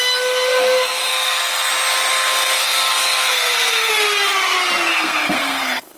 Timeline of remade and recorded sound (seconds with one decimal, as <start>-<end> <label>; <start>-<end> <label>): 0.0-1.1 recorded; 1.1-1.7 remade; 1.7-2.1 recorded; 2.1-3.9 remade; 3.9-4.9 recorded; 4.9-6.0 remade